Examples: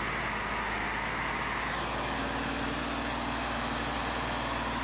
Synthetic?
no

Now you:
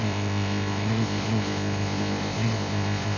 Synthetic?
yes